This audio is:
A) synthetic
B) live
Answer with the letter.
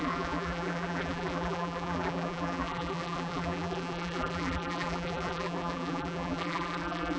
A